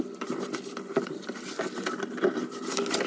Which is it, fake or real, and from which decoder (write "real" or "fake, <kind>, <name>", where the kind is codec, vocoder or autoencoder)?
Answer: real